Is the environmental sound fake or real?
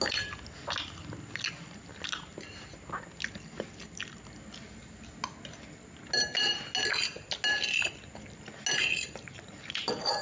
real